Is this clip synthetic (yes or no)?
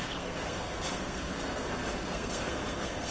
yes